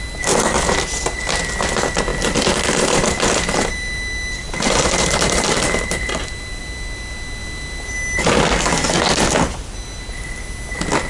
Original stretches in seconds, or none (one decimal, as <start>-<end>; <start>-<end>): 0.0-2.1; 6.6-11.1